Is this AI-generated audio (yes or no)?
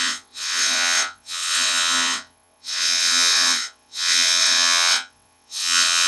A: yes